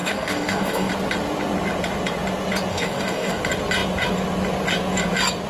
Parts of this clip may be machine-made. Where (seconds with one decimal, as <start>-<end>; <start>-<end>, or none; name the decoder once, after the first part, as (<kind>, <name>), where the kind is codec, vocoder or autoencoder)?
0.0-0.9 (codec, DAC); 2.7-3.4